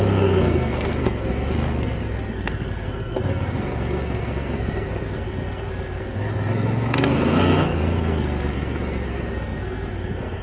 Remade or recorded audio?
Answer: remade